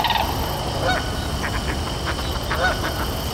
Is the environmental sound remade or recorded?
recorded